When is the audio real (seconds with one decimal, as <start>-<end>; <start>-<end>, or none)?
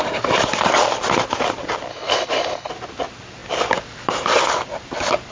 0.0-1.9; 2.7-5.3